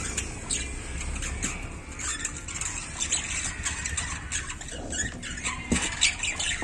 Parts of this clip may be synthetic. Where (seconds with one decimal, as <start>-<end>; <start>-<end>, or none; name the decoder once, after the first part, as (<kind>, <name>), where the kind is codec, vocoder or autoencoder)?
none